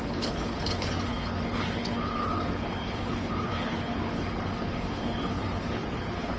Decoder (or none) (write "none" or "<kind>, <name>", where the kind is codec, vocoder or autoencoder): codec, HILCodec